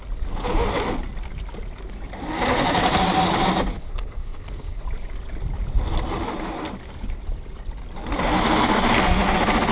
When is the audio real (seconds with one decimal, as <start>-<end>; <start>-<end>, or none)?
0.0-3.7; 4.8-9.7